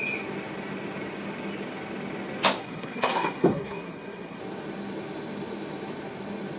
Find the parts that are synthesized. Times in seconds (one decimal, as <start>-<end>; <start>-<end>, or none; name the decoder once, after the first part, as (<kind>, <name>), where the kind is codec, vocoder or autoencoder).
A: 2.6-4.4 (codec, SNAC)